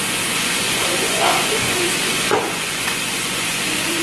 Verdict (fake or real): fake